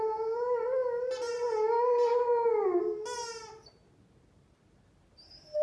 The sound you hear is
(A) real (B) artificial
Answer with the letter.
A